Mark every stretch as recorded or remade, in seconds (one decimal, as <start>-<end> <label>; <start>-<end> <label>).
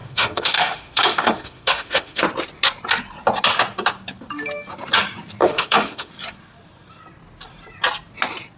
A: 0.0-2.2 remade; 2.2-5.4 recorded; 5.4-6.1 remade; 6.1-8.6 recorded